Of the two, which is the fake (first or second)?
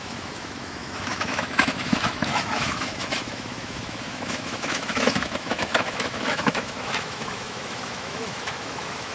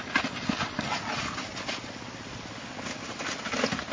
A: first